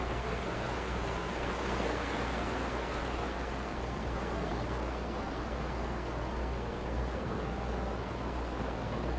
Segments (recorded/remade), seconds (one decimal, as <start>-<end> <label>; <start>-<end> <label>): 0.0-9.2 remade